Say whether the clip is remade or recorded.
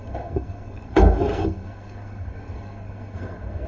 remade